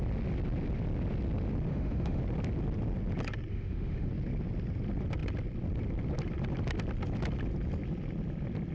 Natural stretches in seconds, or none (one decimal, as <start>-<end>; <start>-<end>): 0.0-1.7; 2.2-3.5; 4.1-8.7